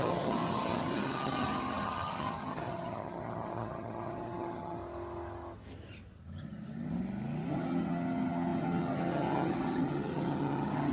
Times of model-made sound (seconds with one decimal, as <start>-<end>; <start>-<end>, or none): 0.0-4.8; 7.5-10.9